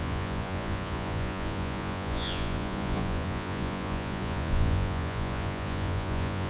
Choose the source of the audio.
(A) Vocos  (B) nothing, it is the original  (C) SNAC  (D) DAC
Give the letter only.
A